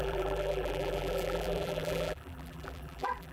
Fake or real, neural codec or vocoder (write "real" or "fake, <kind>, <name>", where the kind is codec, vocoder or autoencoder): fake, vocoder, BigVGAN v2